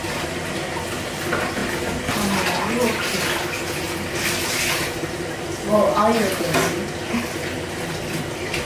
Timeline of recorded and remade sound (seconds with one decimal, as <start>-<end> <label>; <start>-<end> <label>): 0.0-8.6 recorded